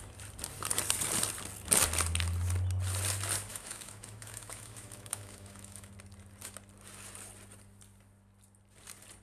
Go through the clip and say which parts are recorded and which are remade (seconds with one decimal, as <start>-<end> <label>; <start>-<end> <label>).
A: 0.0-3.5 recorded; 3.5-5.9 remade; 5.9-9.2 recorded